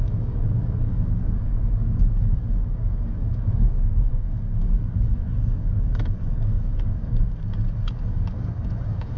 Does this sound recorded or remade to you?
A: remade